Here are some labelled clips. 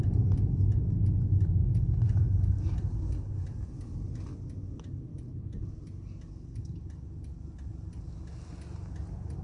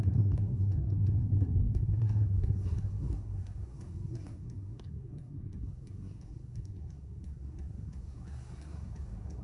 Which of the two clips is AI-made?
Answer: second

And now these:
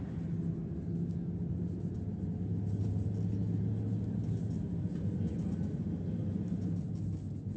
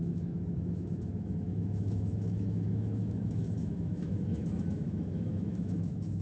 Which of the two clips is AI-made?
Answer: second